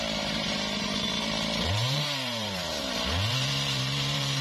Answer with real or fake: fake